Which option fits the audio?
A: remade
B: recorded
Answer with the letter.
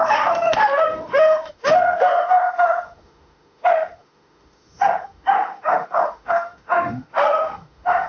A